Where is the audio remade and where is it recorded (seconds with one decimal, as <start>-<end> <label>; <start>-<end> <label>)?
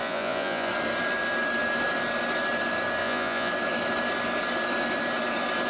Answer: 0.0-0.7 remade; 0.7-3.0 recorded; 3.0-3.5 remade; 3.5-5.7 recorded